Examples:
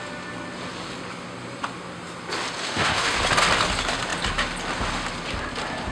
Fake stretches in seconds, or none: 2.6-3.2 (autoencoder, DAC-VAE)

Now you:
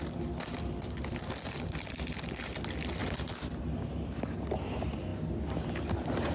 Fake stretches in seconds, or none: none

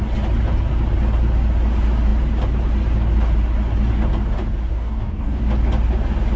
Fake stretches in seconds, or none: 4.7-5.4 (codec, DAC)

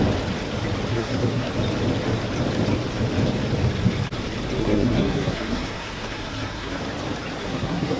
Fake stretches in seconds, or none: 0.9-1.5 (codec, SNAC); 4.6-6.8; 7.4-8.0

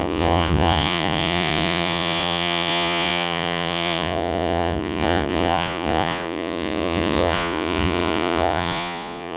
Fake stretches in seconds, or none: 0.0-9.4 (vocoder, Vocos)

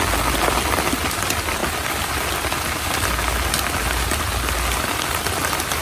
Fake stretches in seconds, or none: none

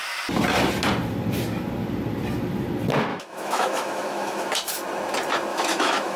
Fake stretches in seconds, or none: 3.1-4.5 (autoencoder, DAC-VAE); 5.5-6.2

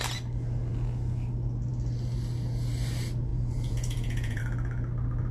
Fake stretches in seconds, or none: 3.3-4.4 (vocoder, Vocos)